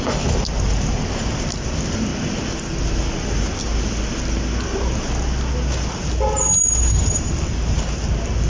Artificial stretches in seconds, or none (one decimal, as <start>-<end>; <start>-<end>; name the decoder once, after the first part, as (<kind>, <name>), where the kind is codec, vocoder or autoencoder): 0.0-2.1 (vocoder, BigVGAN v2); 7.1-8.5